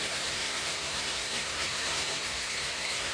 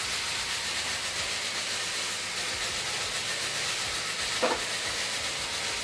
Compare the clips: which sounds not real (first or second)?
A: first